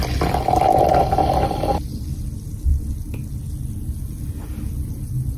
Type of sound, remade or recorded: recorded